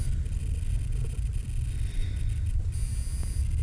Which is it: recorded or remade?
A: recorded